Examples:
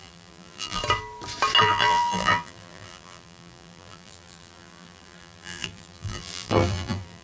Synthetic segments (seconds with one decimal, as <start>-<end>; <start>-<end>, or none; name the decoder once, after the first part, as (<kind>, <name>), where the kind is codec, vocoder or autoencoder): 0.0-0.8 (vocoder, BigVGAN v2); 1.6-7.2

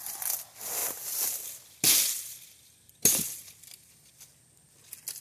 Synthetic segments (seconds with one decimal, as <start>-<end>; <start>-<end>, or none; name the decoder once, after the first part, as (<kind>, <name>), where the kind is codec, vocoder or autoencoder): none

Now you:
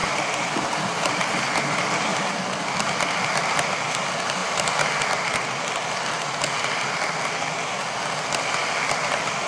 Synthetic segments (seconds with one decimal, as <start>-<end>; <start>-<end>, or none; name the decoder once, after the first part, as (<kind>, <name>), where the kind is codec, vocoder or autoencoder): 0.0-1.1 (vocoder, BigVGAN v2); 4.4-5.1

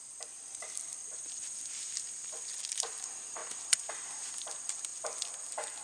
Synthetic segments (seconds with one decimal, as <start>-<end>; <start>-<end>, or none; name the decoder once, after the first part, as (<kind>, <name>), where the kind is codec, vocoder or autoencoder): 0.0-1.0 (vocoder, BigVGAN v2); 2.6-3.4; 3.9-4.9